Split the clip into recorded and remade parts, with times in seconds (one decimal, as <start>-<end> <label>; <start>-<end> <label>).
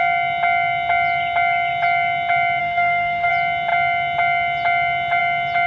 0.0-2.6 recorded; 2.6-3.3 remade; 3.3-5.7 recorded